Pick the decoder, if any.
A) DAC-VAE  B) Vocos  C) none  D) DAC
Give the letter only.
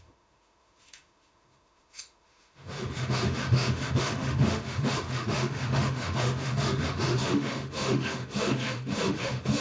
A